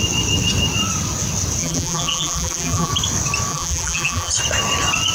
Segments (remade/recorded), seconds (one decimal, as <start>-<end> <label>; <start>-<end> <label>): 0.0-1.6 recorded; 1.6-2.9 remade; 2.9-3.5 recorded; 3.5-4.3 remade; 4.3-5.1 recorded